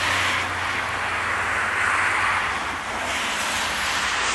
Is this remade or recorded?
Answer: recorded